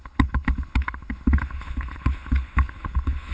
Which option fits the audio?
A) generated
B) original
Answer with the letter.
A